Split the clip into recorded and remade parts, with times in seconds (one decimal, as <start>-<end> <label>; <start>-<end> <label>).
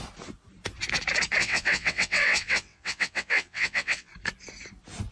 0.0-1.4 recorded; 1.4-4.1 remade; 4.1-5.1 recorded